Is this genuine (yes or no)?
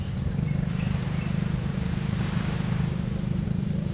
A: no